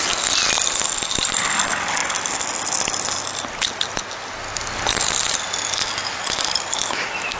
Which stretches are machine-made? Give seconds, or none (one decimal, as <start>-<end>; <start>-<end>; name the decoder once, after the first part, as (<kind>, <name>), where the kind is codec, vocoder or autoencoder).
none